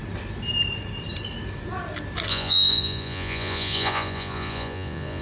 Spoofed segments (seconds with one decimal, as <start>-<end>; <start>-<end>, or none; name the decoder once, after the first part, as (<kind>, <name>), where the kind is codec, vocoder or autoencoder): 2.3-5.2 (vocoder, Vocos)

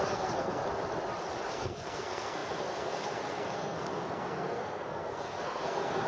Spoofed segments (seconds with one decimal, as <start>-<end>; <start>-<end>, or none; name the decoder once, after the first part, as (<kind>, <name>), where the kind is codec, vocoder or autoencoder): 0.0-0.6 (codec, SNAC); 1.5-6.1

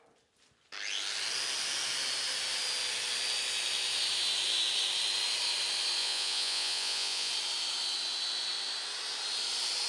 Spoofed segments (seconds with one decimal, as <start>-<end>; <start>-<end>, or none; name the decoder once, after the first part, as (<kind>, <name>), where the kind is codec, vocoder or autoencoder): 6.0-7.3 (vocoder, Vocos)

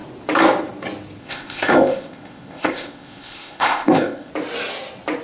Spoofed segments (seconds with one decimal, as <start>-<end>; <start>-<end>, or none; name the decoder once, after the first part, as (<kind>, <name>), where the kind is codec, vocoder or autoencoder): 1.2-4.3 (codec, ZipCodec)